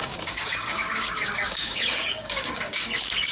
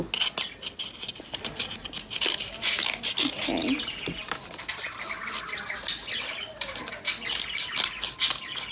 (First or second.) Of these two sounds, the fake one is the first